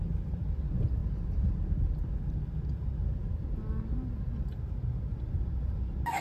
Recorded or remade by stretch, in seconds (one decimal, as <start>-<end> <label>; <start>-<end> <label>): 0.0-6.2 recorded